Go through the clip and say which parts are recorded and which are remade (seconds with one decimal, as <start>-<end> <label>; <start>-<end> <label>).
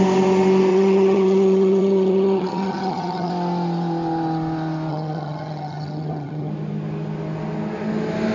0.0-0.7 recorded; 0.7-3.3 remade; 3.3-4.9 recorded; 4.9-6.5 remade; 6.5-8.3 recorded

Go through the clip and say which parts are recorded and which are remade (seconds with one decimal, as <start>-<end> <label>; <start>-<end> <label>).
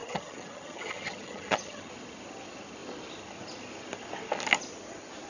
0.0-1.9 remade; 1.9-5.3 recorded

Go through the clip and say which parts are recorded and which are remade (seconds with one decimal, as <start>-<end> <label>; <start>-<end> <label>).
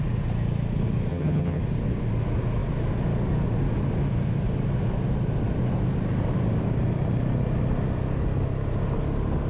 0.0-1.1 recorded; 1.1-1.6 remade; 1.6-9.5 recorded